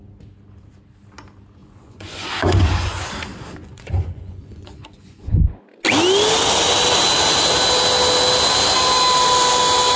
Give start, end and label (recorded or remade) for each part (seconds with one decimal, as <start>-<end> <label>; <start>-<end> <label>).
0.0-1.6 recorded; 1.6-3.1 remade; 3.1-3.6 recorded; 3.6-5.5 remade; 5.5-10.0 recorded